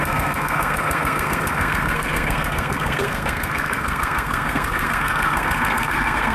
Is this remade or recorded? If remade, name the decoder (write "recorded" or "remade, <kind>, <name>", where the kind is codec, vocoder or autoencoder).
remade, codec, SNAC